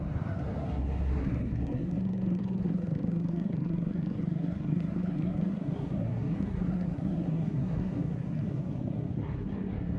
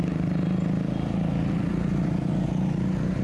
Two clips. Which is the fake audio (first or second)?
first